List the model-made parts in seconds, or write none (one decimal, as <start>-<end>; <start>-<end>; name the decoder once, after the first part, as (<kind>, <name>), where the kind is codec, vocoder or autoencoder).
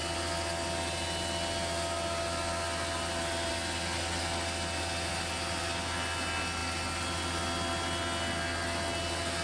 none